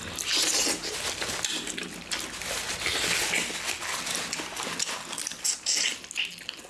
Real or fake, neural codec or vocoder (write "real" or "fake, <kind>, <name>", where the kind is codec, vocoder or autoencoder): real